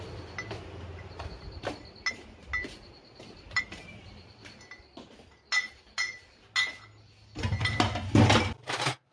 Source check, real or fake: real